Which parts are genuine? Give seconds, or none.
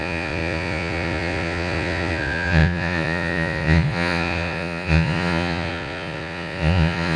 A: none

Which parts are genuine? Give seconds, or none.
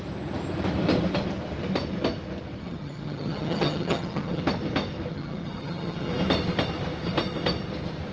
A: 0.0-2.6; 4.4-5.1; 6.1-8.1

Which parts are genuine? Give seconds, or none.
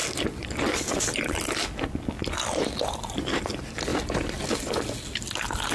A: 3.4-3.9; 4.5-5.7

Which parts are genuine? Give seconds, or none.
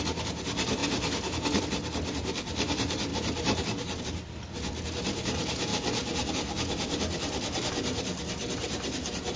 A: 0.0-9.4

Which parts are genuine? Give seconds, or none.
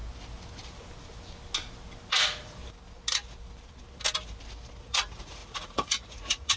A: 0.0-2.1; 2.6-4.8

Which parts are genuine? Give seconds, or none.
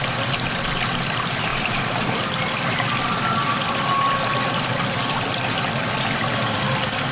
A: 0.0-7.1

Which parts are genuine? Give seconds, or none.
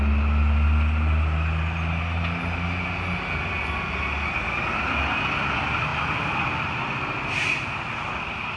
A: 0.0-8.6